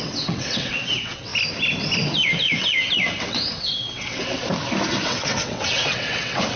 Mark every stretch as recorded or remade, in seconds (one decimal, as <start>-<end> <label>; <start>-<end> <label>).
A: 0.0-1.3 remade; 1.3-3.2 recorded; 3.2-4.4 remade; 4.4-5.0 recorded; 5.0-6.6 remade

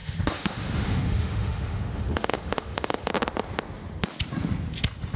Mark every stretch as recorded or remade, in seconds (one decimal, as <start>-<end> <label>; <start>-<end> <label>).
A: 0.0-3.1 remade; 3.1-5.2 recorded

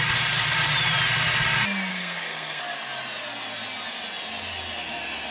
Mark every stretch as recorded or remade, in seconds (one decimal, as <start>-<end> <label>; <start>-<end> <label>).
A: 0.0-1.9 recorded; 1.9-2.6 remade; 2.6-5.3 recorded

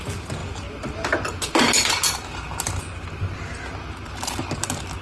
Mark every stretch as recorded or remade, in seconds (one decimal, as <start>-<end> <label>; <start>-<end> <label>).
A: 0.0-5.0 recorded

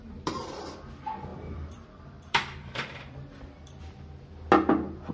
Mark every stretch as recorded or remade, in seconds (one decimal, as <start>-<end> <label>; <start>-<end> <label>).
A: 0.0-1.3 recorded; 1.3-3.8 remade; 3.8-5.1 recorded

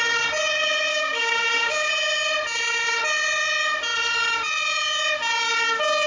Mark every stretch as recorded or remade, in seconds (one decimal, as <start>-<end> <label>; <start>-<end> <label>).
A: 0.0-0.9 recorded; 0.9-1.9 remade; 1.9-6.1 recorded

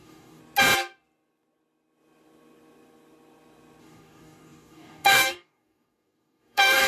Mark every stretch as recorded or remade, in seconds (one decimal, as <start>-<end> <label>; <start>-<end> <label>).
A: 0.0-0.4 remade; 0.4-3.8 recorded; 3.8-6.9 remade

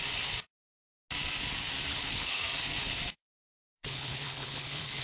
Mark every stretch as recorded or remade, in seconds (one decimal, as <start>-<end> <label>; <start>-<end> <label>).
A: 0.0-1.9 recorded; 1.9-2.4 remade; 2.4-3.2 recorded; 3.2-5.0 remade